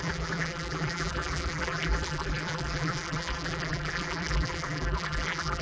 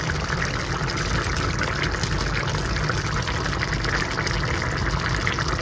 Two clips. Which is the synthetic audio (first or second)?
first